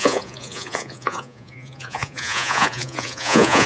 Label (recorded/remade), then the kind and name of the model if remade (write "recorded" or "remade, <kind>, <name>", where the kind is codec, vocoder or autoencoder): remade, vocoder, Vocos